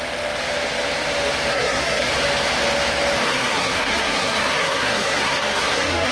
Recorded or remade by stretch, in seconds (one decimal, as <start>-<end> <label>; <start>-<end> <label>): 0.0-1.5 recorded; 1.5-2.1 remade; 2.1-3.3 recorded; 3.3-6.1 remade